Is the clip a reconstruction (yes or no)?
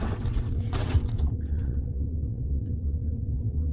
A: yes